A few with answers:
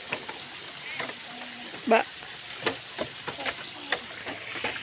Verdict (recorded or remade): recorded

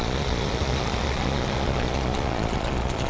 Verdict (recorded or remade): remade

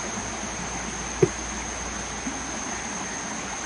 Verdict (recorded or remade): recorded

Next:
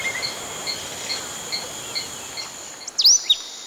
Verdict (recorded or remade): recorded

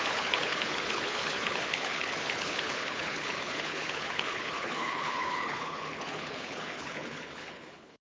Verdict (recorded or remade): remade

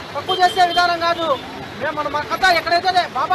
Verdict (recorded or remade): recorded